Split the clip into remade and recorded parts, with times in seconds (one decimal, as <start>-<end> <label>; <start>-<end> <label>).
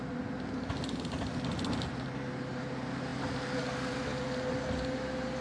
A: 0.0-5.4 recorded